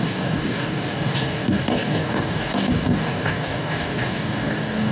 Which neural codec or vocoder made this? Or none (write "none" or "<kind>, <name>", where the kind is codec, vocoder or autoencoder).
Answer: codec, DAC